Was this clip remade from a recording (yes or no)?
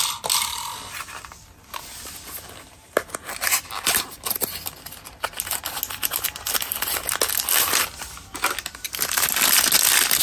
no